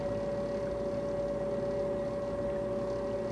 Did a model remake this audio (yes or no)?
no